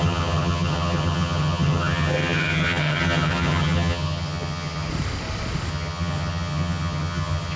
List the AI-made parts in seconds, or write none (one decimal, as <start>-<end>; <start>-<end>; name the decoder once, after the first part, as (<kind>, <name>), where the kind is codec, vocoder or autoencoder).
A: 0.0-4.9 (vocoder, HiFi-GAN); 5.7-7.6